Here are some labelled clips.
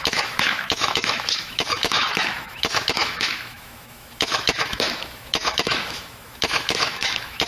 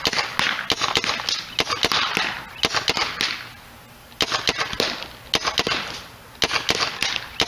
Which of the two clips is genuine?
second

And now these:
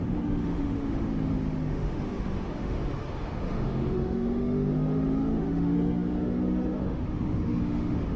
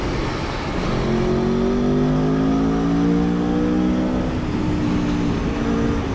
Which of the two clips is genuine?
second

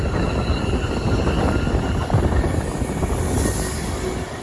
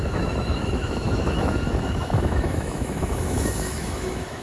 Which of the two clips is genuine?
first